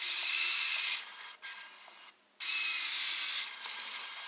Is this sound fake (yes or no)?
no